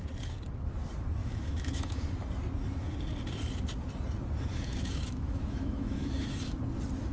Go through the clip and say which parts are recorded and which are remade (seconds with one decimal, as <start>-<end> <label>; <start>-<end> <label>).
0.0-1.2 recorded; 1.2-2.1 remade; 2.1-4.5 recorded; 4.5-6.6 remade; 6.6-7.1 recorded